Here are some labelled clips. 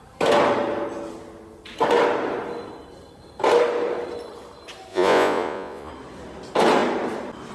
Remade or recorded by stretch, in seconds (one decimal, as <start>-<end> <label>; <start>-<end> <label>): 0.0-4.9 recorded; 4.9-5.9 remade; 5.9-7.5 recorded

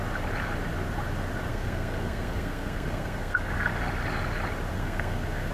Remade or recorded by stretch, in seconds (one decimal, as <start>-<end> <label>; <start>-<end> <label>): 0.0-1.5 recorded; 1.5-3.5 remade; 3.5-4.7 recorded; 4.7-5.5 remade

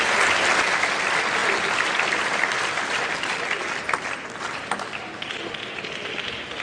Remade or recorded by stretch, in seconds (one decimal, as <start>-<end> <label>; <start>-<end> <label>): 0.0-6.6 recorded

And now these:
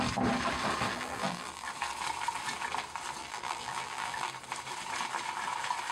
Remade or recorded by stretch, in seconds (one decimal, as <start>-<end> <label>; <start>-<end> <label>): 0.0-0.9 recorded; 0.9-1.7 remade; 1.7-3.2 recorded; 3.2-4.3 remade; 4.3-5.9 recorded

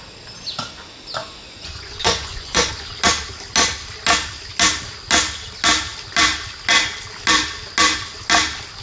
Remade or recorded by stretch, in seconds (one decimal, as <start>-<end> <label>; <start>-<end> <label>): 0.0-1.2 recorded; 1.2-2.7 remade; 2.7-8.8 recorded

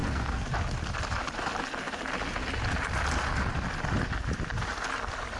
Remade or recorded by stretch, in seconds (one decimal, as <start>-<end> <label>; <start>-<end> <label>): 0.0-0.5 remade; 0.5-5.4 recorded

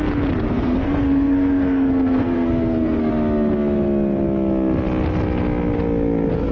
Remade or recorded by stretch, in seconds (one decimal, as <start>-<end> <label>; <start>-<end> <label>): 0.0-0.5 recorded; 0.5-3.1 remade; 3.1-6.5 recorded

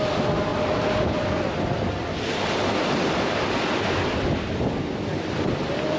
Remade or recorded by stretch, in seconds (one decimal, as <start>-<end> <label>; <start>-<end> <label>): 0.0-6.0 remade